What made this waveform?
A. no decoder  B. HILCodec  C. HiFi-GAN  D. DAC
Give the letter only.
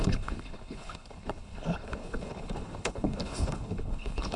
B